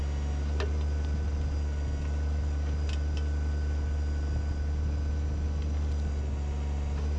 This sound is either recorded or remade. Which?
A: recorded